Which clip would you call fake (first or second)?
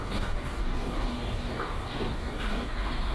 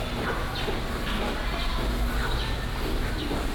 first